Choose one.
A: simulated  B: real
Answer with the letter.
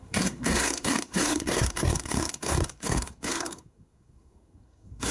A